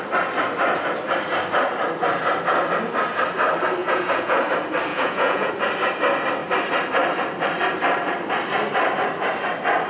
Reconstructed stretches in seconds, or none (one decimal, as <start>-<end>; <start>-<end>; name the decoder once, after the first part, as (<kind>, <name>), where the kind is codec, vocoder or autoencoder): 3.8-4.4 (vocoder, Vocos); 4.9-5.5